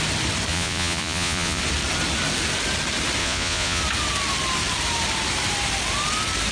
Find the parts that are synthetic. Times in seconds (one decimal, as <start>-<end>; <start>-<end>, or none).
0.5-1.6; 3.2-3.8